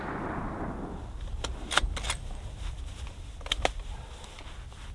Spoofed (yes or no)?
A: no